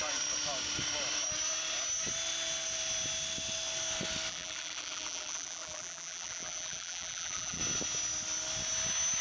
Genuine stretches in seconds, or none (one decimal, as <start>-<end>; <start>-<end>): 0.0-4.3; 7.6-9.2